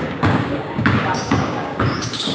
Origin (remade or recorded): remade